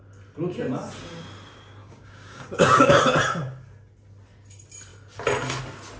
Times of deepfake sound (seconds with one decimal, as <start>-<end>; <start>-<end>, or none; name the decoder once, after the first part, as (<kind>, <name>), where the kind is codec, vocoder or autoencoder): 1.8-3.0 (codec, DAC)